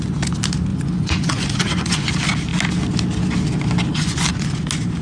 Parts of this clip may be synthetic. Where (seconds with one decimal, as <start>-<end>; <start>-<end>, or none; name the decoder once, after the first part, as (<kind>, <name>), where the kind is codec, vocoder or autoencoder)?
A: 0.7-2.1 (vocoder, Vocos); 3.9-4.6